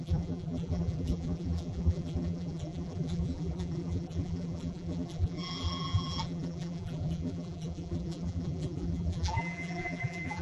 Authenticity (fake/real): fake